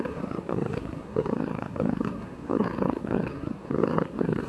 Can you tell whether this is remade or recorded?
remade